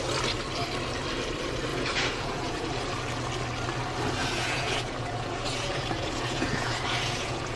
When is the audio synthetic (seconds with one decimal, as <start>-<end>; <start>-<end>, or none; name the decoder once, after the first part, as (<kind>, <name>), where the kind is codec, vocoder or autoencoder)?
1.7-2.7 (vocoder, Vocos); 4.2-7.6